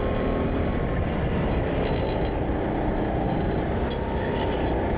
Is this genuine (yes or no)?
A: yes